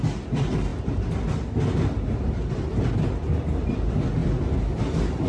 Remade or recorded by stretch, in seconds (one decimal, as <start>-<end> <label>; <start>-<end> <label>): 0.0-5.3 recorded